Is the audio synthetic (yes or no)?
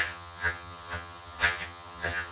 yes